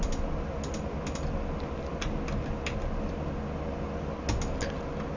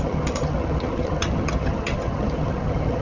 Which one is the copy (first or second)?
second